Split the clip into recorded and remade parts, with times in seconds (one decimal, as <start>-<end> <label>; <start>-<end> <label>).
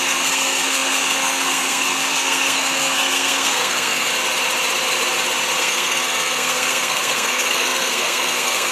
0.0-4.1 remade; 4.1-5.6 recorded; 5.6-8.7 remade